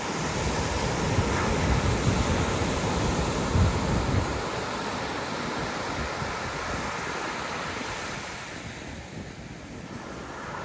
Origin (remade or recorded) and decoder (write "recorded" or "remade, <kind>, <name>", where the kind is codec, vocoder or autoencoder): recorded